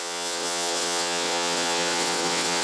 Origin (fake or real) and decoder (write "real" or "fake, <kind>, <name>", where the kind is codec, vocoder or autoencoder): fake, vocoder, WaveNeXt